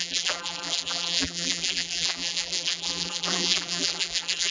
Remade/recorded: remade